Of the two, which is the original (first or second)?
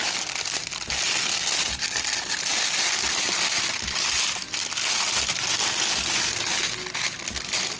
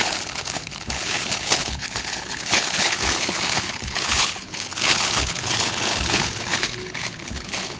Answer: first